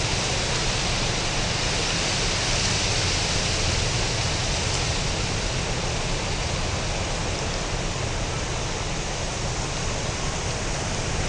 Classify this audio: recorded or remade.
recorded